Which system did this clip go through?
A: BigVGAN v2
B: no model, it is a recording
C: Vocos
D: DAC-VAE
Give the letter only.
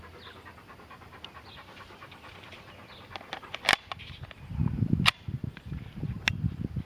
B